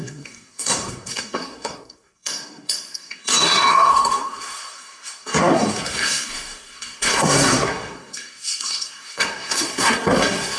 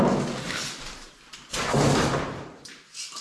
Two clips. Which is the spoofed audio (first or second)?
first